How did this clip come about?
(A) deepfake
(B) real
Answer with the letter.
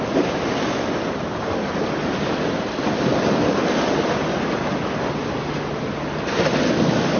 B